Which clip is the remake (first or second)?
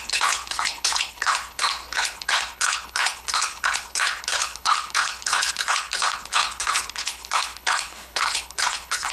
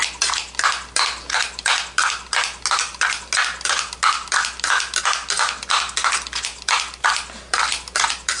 first